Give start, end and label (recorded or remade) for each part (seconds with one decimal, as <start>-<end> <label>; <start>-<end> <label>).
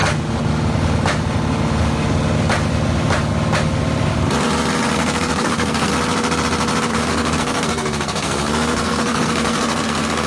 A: 0.0-4.9 recorded; 4.9-5.9 remade; 5.9-6.9 recorded; 6.9-10.3 remade